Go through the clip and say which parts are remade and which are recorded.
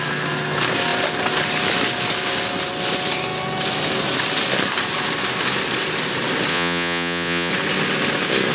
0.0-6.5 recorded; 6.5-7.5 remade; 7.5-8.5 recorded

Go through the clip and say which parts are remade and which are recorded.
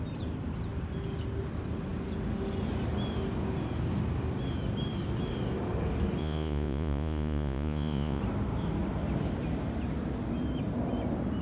0.0-6.2 recorded; 6.2-8.2 remade; 8.2-11.4 recorded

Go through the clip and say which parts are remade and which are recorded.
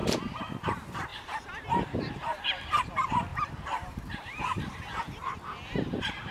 0.0-0.5 remade; 0.5-1.1 recorded; 1.1-2.8 remade; 2.8-3.3 recorded; 3.3-5.0 remade; 5.0-6.3 recorded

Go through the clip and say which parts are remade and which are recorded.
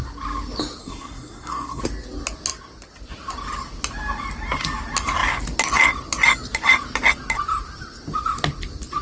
0.0-0.8 recorded; 0.8-1.8 remade; 1.8-9.0 recorded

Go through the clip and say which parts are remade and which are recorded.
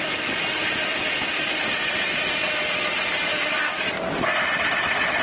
0.0-0.6 recorded; 0.6-3.7 remade; 3.7-5.2 recorded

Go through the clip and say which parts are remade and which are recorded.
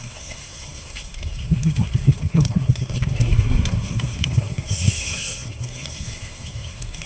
0.0-7.1 remade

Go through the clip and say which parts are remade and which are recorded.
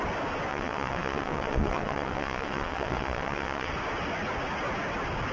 0.0-0.5 recorded; 0.5-3.7 remade; 3.7-5.3 recorded